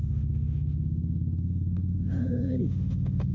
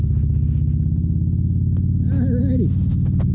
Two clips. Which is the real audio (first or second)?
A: second